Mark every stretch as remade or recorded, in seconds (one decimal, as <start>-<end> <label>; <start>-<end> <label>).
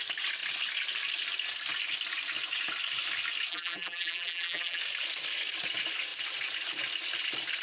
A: 0.0-3.5 recorded; 3.5-4.8 remade; 4.8-7.6 recorded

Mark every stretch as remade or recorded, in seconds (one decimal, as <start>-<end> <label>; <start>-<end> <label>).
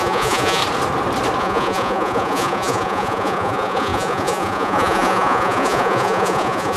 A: 0.0-0.6 remade; 0.6-1.4 recorded; 1.4-6.8 remade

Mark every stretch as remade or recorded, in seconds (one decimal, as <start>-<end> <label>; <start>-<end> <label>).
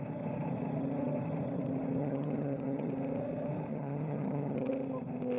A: 0.0-2.0 recorded; 2.0-2.9 remade; 2.9-3.7 recorded; 3.7-4.7 remade; 4.7-5.4 recorded